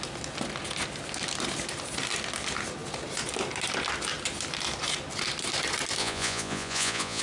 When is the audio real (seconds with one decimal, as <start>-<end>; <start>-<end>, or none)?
0.0-6.0

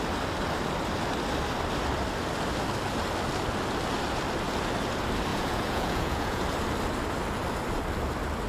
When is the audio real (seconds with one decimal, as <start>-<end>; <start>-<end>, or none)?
0.0-5.3; 6.4-8.5

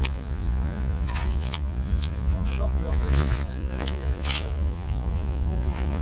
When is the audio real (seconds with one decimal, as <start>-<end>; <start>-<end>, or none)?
none

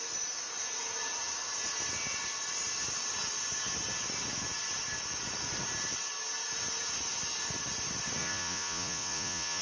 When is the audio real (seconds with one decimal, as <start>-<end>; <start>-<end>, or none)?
0.0-8.2

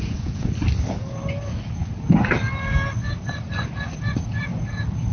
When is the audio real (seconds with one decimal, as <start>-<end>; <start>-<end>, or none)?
0.5-5.1